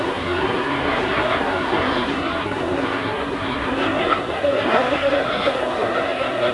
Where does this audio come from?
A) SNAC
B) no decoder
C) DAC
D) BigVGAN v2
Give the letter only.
A